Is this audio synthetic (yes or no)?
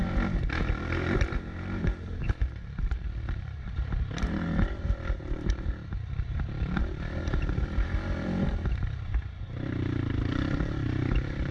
yes